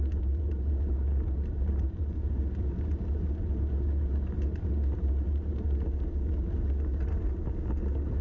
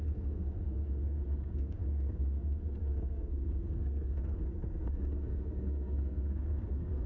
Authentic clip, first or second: first